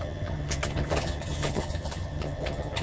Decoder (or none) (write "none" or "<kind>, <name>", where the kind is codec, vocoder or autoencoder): vocoder, HiFi-GAN